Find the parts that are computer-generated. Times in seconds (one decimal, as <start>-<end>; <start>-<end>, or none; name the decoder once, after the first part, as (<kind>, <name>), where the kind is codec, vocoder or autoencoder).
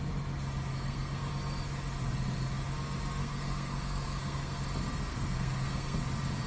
0.7-1.3 (codec, SNAC); 3.2-4.6; 5.1-6.0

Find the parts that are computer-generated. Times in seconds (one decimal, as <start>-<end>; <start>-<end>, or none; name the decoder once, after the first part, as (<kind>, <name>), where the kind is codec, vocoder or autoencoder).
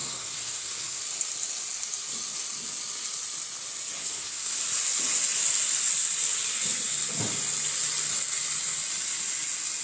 0.0-1.0 (codec, SNAC); 4.0-4.6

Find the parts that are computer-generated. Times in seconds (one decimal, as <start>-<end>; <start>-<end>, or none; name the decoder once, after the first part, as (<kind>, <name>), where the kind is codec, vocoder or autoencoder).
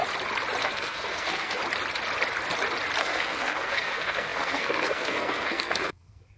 0.6-1.6 (codec, SNAC); 3.0-6.4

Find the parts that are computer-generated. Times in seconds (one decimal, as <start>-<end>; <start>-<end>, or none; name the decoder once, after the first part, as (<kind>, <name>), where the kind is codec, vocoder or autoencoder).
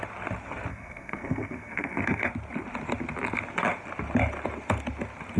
0.7-2.3 (codec, SNAC)